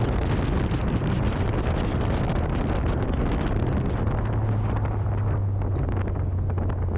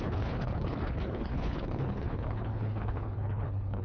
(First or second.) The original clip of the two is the first